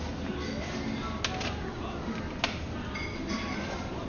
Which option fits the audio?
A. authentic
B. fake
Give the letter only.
A